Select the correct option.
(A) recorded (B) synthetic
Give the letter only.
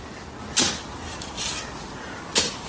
A